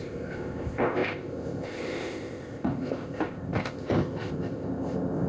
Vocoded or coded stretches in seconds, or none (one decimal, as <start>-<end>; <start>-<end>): 0.0-5.3